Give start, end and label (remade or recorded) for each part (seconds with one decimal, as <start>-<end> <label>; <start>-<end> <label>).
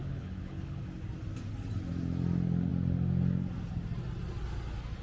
0.0-0.8 remade; 0.8-5.0 recorded